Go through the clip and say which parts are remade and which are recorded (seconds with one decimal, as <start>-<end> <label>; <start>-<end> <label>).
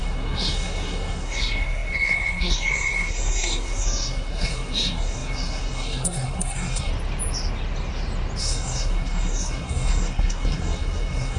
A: 0.0-6.9 remade; 6.9-8.4 recorded; 8.4-11.4 remade